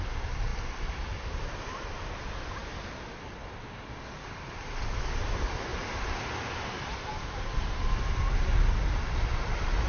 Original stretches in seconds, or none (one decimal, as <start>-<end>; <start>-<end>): 0.0-9.9